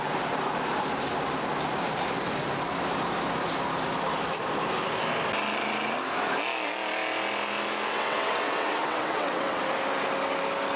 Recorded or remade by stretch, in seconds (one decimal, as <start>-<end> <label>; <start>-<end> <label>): 0.0-7.9 recorded; 7.9-9.6 remade; 9.6-10.8 recorded